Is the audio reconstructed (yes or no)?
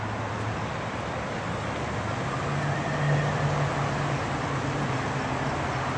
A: no